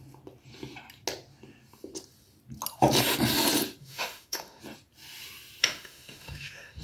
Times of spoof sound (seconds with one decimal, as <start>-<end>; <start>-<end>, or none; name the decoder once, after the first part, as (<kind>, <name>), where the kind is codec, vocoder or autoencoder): 3.8-4.6 (autoencoder, DAC-VAE); 5.6-6.8